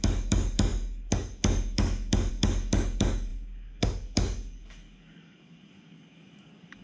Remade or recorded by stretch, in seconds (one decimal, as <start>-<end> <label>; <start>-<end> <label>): 0.0-6.8 remade